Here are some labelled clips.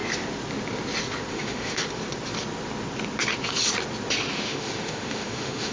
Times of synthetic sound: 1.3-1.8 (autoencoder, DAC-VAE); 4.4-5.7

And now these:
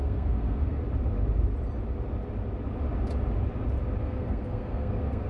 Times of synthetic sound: 0.0-0.8 (codec, SNAC); 4.0-5.3

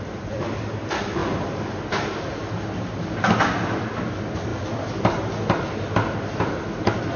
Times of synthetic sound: none

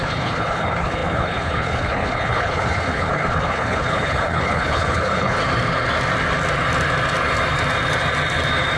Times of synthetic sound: 0.0-5.4 (codec, HILCodec)